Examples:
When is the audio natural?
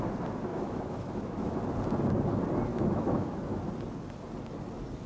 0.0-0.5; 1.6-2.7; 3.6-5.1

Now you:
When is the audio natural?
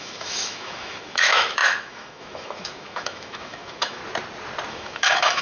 4.0-4.7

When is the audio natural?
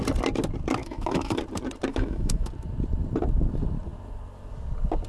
0.0-0.8; 1.4-1.9; 2.5-5.1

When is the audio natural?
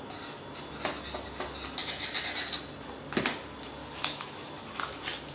0.0-3.8; 4.5-5.3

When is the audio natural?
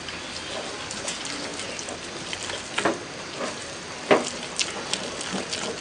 0.0-5.8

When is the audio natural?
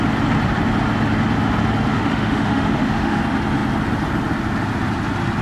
0.0-1.9; 3.2-5.4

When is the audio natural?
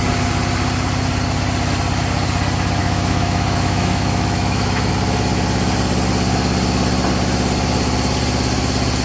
0.0-2.8; 4.9-9.0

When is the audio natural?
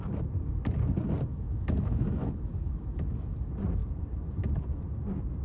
0.0-1.3; 3.3-5.4